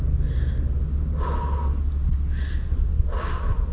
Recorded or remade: recorded